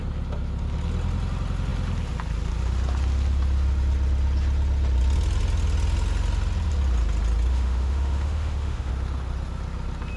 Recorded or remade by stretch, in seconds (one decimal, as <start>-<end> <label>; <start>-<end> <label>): 0.0-7.5 recorded; 7.5-8.9 remade; 8.9-10.2 recorded